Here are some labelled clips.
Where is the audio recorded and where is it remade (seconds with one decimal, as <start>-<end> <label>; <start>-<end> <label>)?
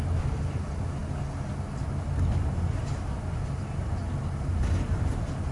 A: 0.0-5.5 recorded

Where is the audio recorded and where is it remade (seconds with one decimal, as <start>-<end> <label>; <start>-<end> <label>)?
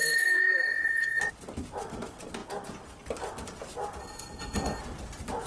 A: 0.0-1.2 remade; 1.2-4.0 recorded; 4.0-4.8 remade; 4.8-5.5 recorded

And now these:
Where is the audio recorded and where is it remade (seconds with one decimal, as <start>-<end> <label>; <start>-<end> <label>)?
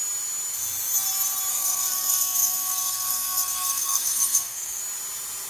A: 0.0-1.5 recorded; 1.5-4.8 remade; 4.8-5.5 recorded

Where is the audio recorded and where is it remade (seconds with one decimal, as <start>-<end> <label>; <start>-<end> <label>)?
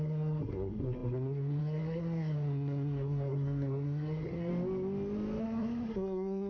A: 0.0-4.5 remade; 4.5-5.4 recorded; 5.4-6.5 remade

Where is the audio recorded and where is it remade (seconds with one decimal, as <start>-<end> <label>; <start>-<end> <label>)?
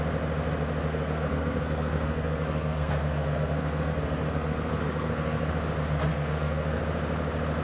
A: 0.0-0.9 recorded; 0.9-5.5 remade; 5.5-6.1 recorded; 6.1-6.8 remade; 6.8-7.6 recorded